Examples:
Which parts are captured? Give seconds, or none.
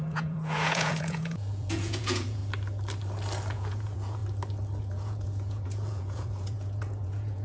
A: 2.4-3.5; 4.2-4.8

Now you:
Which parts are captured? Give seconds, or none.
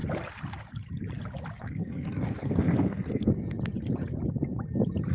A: 0.0-1.6; 3.3-5.1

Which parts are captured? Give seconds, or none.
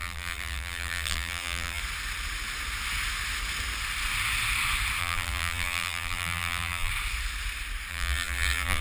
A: 1.8-5.0; 6.9-7.9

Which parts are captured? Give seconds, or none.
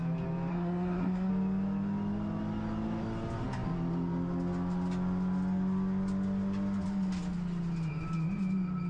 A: 0.0-0.5; 1.3-8.9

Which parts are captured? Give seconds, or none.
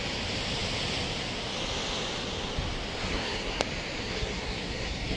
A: 0.0-3.0; 3.6-4.0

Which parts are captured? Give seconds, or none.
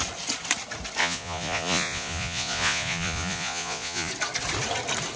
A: 0.0-1.0; 4.1-5.2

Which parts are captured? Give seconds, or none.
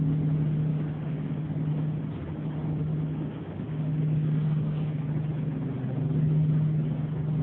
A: 0.0-0.7; 1.7-2.9; 5.1-7.4